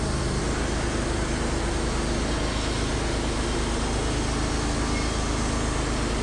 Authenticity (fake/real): real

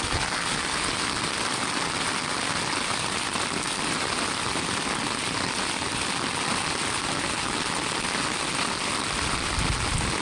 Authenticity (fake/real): real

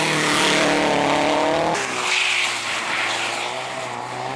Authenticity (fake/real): real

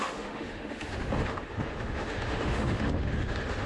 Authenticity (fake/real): fake